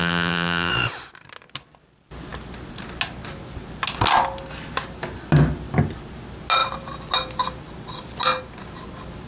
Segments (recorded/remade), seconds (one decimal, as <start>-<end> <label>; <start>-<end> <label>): 0.0-0.7 remade; 0.7-9.3 recorded